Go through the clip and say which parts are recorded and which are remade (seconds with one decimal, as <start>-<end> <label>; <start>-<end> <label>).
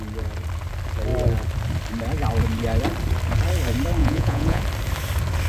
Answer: 0.0-4.0 recorded; 4.0-4.6 remade; 4.6-5.5 recorded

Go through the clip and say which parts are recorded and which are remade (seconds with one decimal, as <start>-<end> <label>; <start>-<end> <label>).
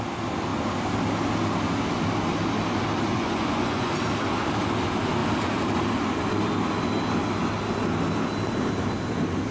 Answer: 0.0-3.1 recorded; 3.1-3.9 remade; 3.9-9.5 recorded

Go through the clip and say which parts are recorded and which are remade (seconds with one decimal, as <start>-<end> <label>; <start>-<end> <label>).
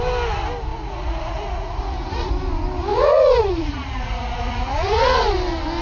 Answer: 0.0-0.7 recorded; 0.7-2.3 remade; 2.3-2.9 recorded; 2.9-5.3 remade; 5.3-5.8 recorded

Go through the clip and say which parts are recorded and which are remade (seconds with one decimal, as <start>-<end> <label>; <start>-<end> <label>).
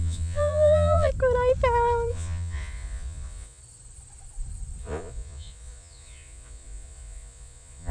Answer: 0.0-1.1 remade; 1.1-2.1 recorded; 2.1-3.6 remade; 3.6-4.8 recorded; 4.8-7.9 remade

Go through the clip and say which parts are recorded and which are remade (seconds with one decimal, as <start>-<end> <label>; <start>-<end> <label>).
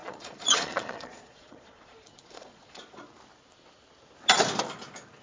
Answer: 0.0-3.1 remade; 3.1-5.2 recorded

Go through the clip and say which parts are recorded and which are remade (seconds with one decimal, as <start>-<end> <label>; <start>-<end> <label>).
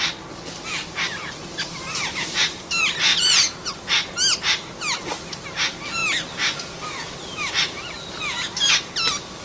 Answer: 0.0-3.1 recorded; 3.1-3.7 remade; 3.7-9.4 recorded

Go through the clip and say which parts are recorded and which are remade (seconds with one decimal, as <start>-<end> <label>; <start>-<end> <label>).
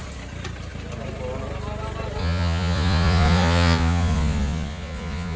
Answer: 0.0-2.2 recorded; 2.2-5.4 remade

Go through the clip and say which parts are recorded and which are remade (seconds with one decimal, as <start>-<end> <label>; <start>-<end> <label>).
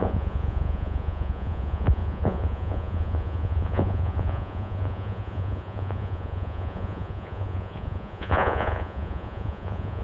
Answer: 0.0-10.0 remade